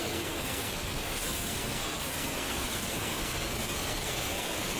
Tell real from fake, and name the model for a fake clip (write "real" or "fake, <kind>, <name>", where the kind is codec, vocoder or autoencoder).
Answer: fake, codec, SNAC